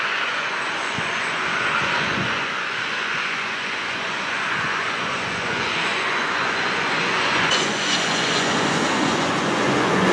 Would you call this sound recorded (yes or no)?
no